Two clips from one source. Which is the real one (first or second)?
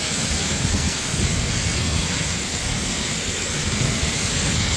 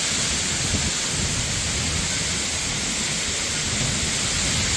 second